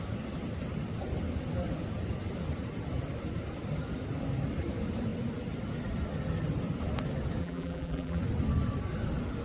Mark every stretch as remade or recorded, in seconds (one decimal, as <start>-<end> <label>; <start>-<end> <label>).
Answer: 0.0-7.4 recorded; 7.4-8.2 remade; 8.2-9.4 recorded